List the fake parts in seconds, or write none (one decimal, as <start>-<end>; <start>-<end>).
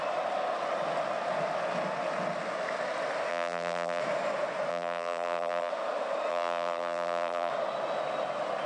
3.3-4.0; 4.7-5.7; 6.3-7.5